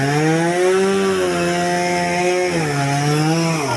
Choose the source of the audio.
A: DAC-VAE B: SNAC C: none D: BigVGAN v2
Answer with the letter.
C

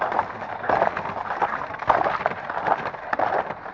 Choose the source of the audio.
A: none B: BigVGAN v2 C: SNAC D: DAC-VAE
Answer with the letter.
A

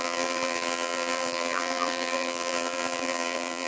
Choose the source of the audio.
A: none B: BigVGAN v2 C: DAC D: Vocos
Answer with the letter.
B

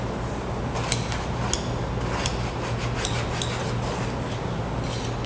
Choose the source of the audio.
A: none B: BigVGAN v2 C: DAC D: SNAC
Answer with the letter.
A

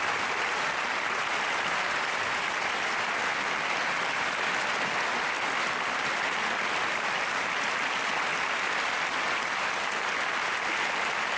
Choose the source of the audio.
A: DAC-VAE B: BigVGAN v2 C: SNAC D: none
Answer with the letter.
D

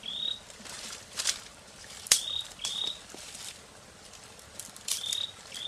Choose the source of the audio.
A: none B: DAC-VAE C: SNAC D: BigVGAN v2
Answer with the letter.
D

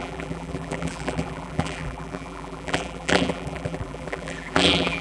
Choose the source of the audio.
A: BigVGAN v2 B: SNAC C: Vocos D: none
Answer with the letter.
A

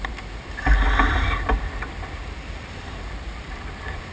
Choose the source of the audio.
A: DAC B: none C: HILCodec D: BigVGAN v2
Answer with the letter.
D